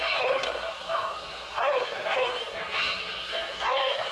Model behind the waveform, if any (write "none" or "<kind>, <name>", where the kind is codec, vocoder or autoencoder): codec, SNAC